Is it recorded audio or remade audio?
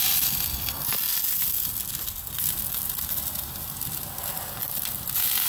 recorded